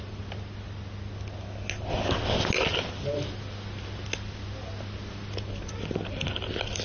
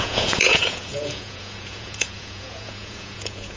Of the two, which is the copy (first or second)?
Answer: second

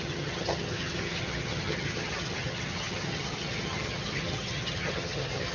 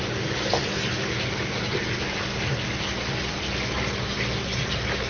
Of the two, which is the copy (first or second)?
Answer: first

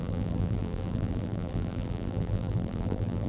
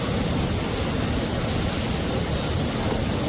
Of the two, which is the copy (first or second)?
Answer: first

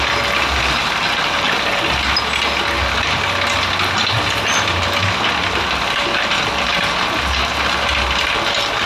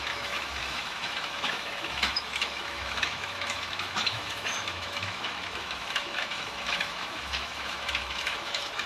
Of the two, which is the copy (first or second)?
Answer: second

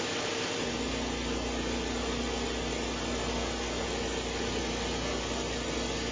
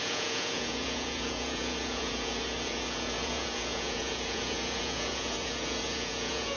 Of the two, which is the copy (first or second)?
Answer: second